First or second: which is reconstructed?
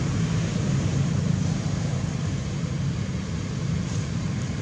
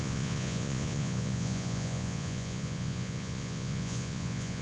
second